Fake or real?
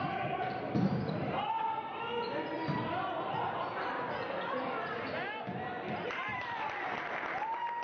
real